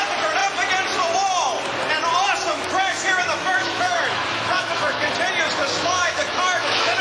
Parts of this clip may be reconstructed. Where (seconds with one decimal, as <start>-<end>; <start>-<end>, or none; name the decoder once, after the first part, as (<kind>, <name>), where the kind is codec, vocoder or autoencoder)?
2.5-5.1 (autoencoder, DAC-VAE); 5.6-7.0